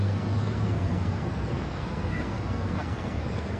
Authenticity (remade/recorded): remade